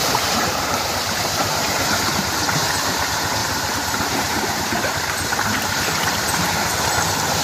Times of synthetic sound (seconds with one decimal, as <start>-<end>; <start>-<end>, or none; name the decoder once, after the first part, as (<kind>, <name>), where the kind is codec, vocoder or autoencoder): 0.0-2.0 (vocoder, BigVGAN v2); 3.4-6.7